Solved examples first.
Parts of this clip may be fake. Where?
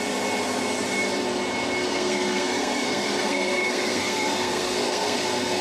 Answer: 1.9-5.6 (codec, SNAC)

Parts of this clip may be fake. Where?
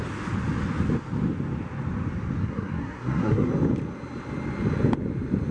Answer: 2.4-3.5 (codec, SNAC)